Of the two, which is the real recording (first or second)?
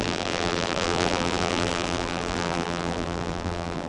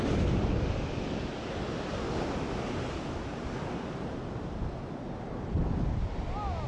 second